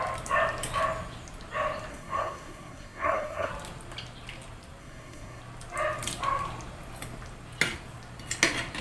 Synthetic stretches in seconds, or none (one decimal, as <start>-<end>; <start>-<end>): 1.9-3.5; 4.8-5.4